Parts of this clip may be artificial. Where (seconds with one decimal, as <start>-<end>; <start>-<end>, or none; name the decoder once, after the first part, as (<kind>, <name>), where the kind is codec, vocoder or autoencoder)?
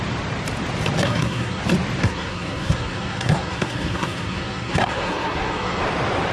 1.0-1.6 (codec, SNAC); 2.0-5.8